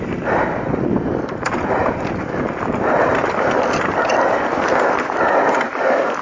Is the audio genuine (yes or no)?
yes